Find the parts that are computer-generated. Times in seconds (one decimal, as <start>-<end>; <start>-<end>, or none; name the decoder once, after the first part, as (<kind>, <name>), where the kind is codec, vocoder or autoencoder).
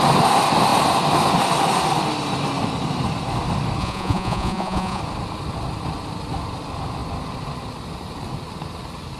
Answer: 3.8-5.0 (vocoder, Vocos)